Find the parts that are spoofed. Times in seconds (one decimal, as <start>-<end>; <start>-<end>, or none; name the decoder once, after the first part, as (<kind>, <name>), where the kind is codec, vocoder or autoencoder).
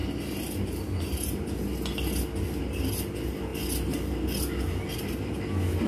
none